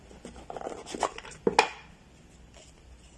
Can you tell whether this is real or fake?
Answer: real